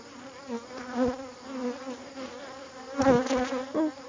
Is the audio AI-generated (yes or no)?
no